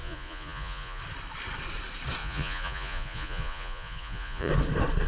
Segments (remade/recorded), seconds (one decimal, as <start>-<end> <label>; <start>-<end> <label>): 0.0-1.0 remade; 1.0-2.2 recorded; 2.2-4.5 remade; 4.5-5.1 recorded